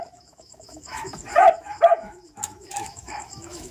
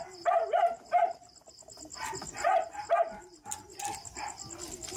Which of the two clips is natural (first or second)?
second